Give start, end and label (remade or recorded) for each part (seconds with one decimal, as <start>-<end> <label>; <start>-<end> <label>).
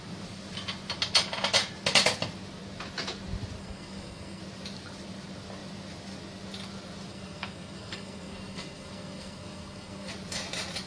0.0-3.6 recorded; 3.6-4.4 remade; 4.4-7.1 recorded; 7.1-10.1 remade; 10.1-10.9 recorded